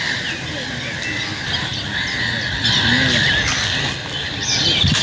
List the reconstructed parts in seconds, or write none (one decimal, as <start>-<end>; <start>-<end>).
none